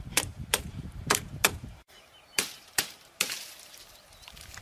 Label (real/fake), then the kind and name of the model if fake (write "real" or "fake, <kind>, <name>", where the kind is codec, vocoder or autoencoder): fake, vocoder, BigVGAN v2